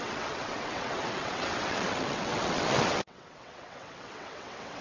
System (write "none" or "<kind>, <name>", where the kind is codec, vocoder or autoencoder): vocoder, WaveNeXt